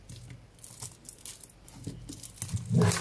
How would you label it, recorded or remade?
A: recorded